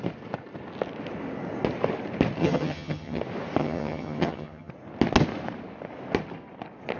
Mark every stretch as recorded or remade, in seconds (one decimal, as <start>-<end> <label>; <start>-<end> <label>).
0.0-2.4 recorded; 2.4-3.2 remade; 3.2-3.6 recorded; 3.6-4.7 remade; 4.7-7.0 recorded